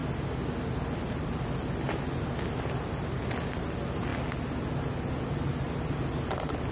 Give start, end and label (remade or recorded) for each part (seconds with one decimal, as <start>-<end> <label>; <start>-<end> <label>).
0.0-6.7 recorded